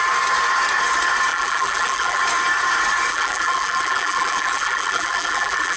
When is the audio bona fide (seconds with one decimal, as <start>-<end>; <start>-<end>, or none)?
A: 0.0-1.3; 2.2-3.1